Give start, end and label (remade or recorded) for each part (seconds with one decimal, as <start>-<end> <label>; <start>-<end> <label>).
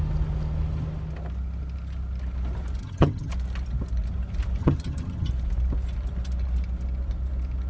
0.0-2.8 recorded; 2.8-3.3 remade; 3.3-4.6 recorded; 4.6-5.3 remade; 5.3-7.7 recorded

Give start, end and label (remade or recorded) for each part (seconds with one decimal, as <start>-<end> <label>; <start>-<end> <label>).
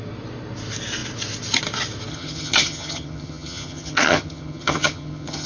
0.0-2.1 recorded; 2.1-5.5 remade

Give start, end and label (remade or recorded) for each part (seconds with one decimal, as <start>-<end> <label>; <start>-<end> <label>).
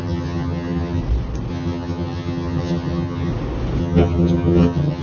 0.0-1.0 remade; 1.0-1.5 recorded; 1.5-3.3 remade; 3.3-3.8 recorded; 3.8-5.0 remade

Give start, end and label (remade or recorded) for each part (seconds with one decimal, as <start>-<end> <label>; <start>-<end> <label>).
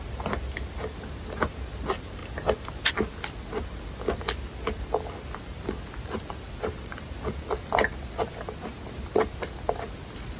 0.0-10.4 recorded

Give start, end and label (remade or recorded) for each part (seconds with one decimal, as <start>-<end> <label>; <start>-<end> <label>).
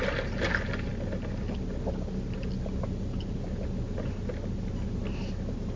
0.0-5.8 recorded